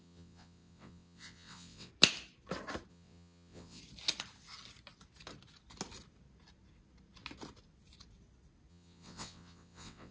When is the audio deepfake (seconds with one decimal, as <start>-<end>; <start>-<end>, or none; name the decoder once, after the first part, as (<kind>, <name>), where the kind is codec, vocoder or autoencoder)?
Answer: 0.0-1.9 (vocoder, WaveNeXt); 2.9-3.8; 8.7-10.1